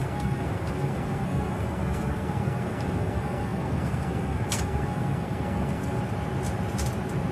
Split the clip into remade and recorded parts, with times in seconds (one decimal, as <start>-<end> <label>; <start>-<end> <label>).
0.0-6.0 remade; 6.0-7.3 recorded